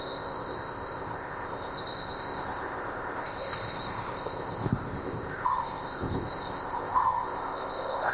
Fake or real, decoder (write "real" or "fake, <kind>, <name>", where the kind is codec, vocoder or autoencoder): fake, codec, ZipCodec